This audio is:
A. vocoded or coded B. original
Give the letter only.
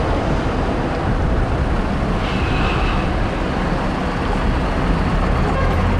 B